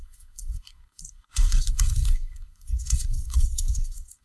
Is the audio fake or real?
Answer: fake